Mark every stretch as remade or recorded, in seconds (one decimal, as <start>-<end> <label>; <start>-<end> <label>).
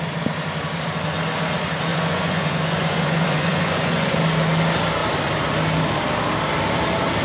0.0-1.9 recorded; 1.9-4.1 remade; 4.1-7.2 recorded